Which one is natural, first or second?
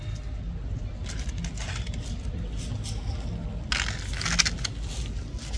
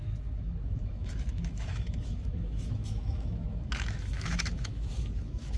first